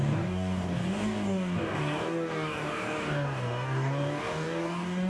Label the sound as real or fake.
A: fake